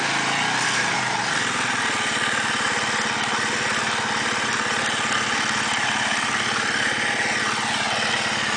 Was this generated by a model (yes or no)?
no